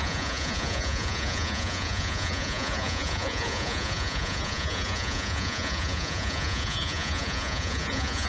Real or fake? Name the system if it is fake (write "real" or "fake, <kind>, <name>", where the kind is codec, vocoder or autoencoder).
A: fake, vocoder, Vocos